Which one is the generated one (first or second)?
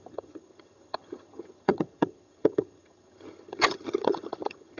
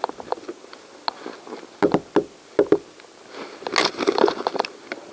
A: first